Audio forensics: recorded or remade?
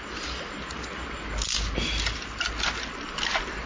recorded